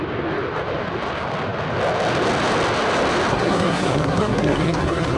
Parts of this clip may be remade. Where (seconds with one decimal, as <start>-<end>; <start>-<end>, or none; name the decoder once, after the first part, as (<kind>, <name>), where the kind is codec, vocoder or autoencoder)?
3.3-5.2 (codec, SNAC)